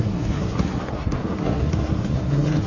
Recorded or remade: remade